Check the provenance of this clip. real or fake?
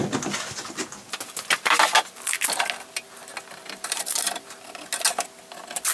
real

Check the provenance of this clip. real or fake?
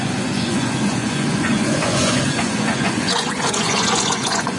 fake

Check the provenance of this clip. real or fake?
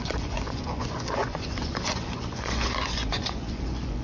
fake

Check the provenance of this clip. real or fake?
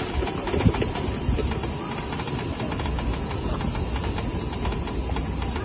real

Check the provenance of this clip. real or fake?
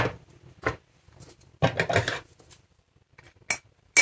real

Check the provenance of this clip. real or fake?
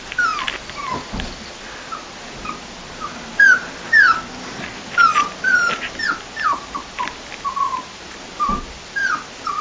real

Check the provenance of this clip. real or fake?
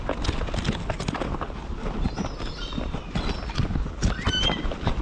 real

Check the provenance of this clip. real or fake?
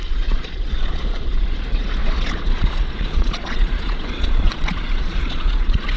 fake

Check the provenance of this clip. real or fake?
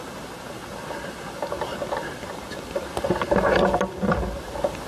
real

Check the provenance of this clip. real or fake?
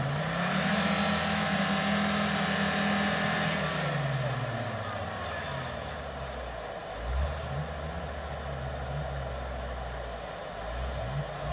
real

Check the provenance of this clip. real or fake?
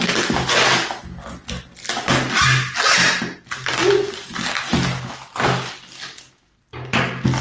real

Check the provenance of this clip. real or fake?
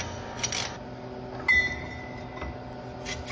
real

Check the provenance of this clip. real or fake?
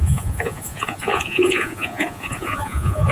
fake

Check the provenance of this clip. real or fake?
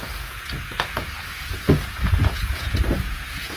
fake